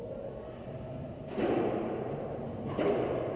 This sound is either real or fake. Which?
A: real